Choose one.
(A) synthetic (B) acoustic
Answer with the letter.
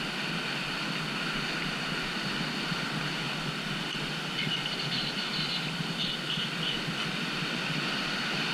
B